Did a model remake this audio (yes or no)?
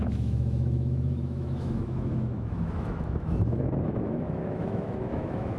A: yes